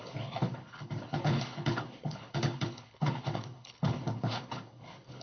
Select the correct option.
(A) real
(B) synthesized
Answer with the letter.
B